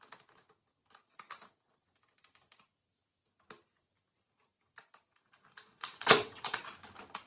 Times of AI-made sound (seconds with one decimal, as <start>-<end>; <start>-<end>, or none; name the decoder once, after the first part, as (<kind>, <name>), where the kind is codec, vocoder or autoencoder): 5.6-6.6 (vocoder, WaveNeXt)